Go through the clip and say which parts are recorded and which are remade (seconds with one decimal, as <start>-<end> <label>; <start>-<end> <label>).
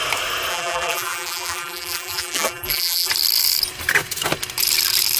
0.0-0.5 recorded; 0.5-3.1 remade; 3.1-5.2 recorded